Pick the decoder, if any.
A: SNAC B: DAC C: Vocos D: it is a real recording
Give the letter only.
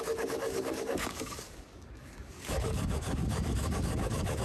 B